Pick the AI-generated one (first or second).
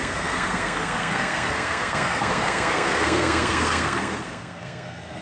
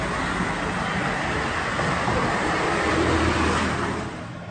first